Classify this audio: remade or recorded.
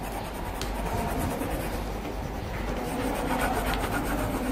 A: recorded